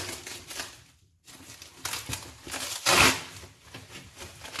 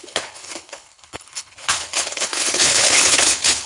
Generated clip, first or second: second